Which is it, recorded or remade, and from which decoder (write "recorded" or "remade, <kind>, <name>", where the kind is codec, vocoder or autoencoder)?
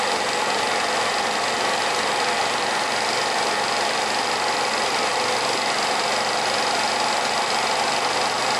recorded